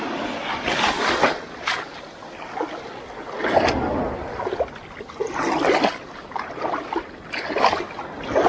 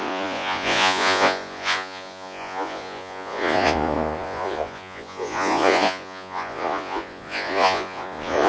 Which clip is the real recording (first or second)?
first